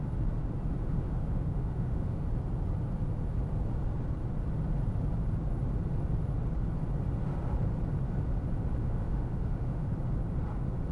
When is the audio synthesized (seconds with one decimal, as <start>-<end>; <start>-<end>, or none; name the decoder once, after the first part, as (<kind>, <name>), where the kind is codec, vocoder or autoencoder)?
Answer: 0.8-2.3 (autoencoder, DAC-VAE); 8.8-9.9